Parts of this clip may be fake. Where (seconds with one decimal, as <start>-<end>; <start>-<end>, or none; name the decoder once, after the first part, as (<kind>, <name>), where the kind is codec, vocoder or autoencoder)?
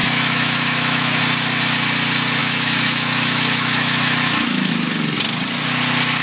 0.0-1.2 (autoencoder, DAC-VAE); 2.4-4.7